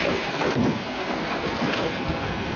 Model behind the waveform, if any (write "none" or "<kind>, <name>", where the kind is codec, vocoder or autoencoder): codec, SNAC